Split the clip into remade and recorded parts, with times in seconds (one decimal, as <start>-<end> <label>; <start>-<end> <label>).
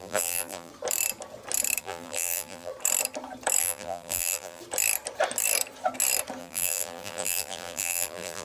0.0-0.7 remade; 0.7-1.8 recorded; 1.8-2.7 remade; 2.7-3.6 recorded; 3.6-4.6 remade; 4.6-6.4 recorded; 6.4-8.4 remade